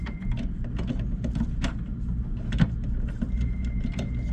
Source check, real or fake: real